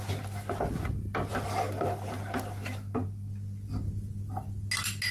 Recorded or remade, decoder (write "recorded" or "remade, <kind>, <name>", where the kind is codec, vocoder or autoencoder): recorded